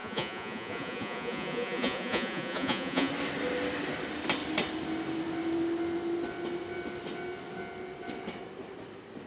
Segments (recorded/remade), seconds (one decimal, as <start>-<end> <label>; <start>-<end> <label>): 0.0-3.1 remade; 3.1-9.3 recorded